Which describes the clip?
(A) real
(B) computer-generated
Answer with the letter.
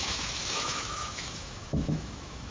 B